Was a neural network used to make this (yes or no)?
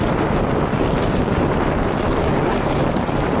yes